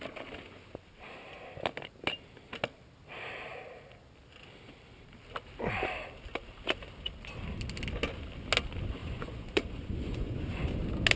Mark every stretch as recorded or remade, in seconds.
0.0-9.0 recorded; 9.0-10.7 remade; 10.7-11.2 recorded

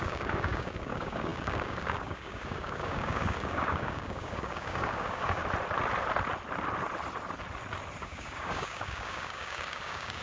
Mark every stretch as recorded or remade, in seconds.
0.0-5.4 remade; 5.4-8.0 recorded; 8.0-10.2 remade

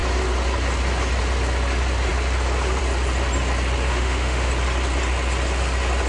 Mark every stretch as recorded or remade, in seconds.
0.0-3.9 recorded; 3.9-4.5 remade; 4.5-6.1 recorded

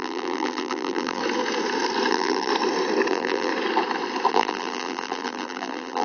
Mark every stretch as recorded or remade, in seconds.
0.0-1.2 remade; 1.2-2.1 recorded; 2.1-2.5 remade; 2.5-3.1 recorded; 3.1-3.5 remade; 3.5-4.3 recorded; 4.3-6.0 remade

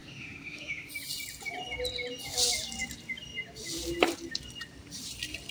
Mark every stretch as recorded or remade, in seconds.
0.0-0.9 remade; 0.9-5.5 recorded

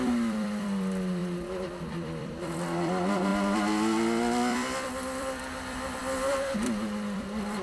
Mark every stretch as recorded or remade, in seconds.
0.0-1.2 remade; 1.2-1.8 recorded; 1.8-7.6 remade

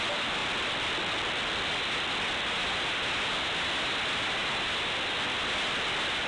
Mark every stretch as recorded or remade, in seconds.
0.0-6.3 recorded

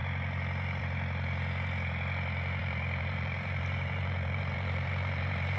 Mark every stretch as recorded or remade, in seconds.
0.0-2.6 recorded; 2.6-5.6 remade